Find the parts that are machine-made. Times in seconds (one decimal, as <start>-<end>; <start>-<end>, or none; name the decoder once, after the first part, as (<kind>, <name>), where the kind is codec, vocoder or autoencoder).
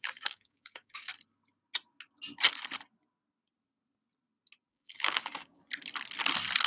0.0-1.1 (codec, DAC); 4.7-5.6